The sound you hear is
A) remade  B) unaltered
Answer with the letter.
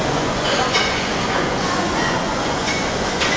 A